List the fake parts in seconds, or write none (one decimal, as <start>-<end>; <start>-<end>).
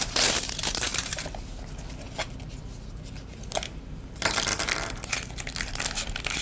none